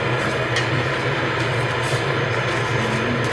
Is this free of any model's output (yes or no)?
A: yes